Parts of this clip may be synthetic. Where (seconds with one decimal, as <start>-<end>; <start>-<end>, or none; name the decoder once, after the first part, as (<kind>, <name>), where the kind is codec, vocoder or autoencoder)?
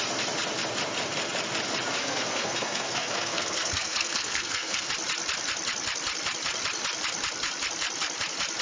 2.0-4.9 (codec, SNAC)